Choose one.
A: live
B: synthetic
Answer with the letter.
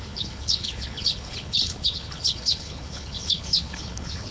B